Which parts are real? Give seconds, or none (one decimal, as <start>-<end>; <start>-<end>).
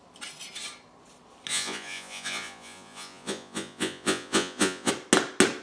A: 0.0-1.5; 4.9-5.6